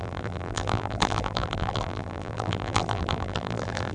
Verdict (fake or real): fake